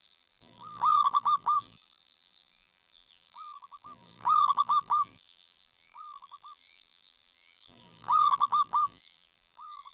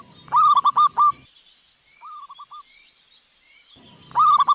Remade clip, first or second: first